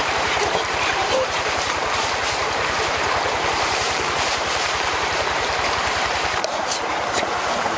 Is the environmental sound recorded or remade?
remade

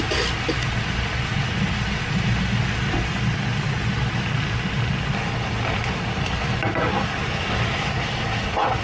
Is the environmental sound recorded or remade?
recorded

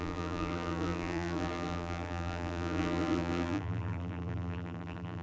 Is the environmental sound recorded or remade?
remade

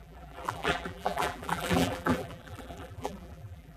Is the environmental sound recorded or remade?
remade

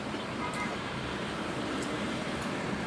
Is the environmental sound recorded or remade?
remade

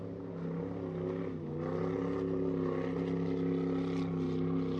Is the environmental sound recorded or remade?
recorded